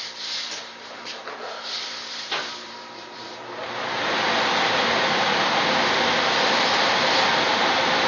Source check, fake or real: real